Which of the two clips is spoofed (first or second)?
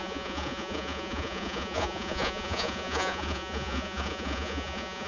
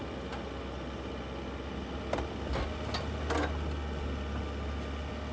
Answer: first